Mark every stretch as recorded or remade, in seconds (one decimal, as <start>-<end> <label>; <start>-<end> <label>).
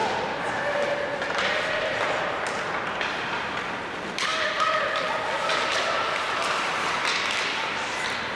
0.0-8.4 recorded